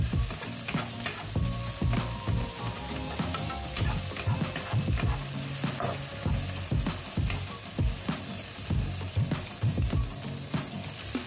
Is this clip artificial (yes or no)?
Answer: no